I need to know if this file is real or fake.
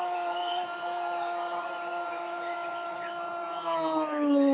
real